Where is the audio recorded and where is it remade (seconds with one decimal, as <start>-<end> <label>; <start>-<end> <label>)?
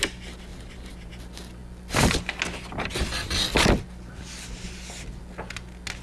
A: 0.0-0.5 recorded; 0.5-1.1 remade; 1.1-6.0 recorded